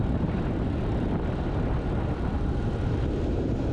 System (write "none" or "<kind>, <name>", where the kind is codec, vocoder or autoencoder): none